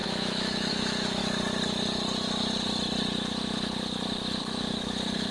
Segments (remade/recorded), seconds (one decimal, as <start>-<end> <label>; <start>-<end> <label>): 0.0-1.2 remade; 1.2-4.4 recorded; 4.4-5.3 remade